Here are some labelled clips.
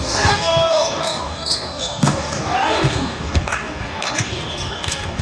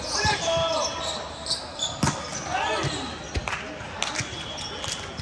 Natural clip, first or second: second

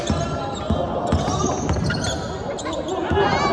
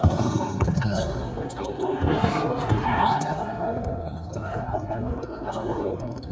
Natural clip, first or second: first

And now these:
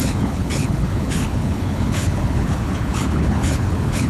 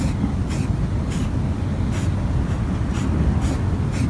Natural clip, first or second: second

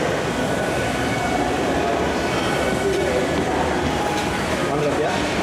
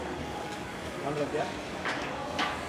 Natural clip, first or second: first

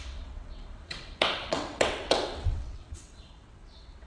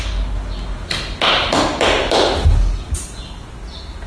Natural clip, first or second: second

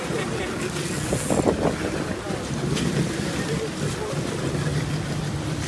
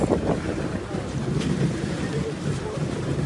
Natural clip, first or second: first